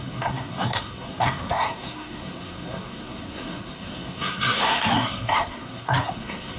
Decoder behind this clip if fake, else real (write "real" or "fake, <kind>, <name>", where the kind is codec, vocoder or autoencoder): fake, codec, SNAC